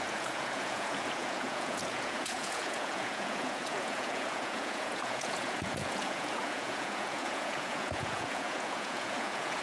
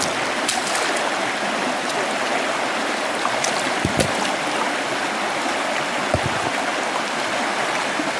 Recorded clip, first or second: second